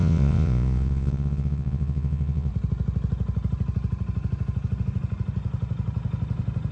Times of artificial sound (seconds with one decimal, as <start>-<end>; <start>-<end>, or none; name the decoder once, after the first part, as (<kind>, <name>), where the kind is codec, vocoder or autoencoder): 0.0-2.5 (vocoder, Vocos)